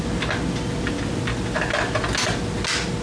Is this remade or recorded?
recorded